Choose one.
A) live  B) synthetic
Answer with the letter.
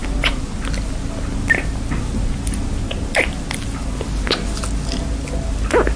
A